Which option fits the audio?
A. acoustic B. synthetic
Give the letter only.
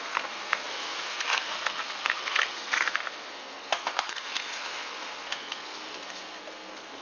B